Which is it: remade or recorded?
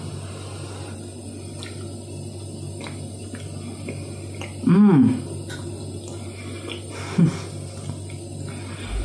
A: recorded